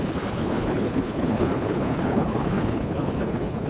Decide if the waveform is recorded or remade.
remade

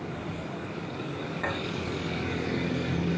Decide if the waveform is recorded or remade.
remade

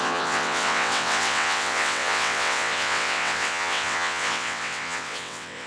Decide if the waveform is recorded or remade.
remade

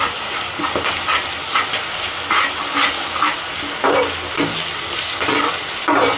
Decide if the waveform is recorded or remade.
recorded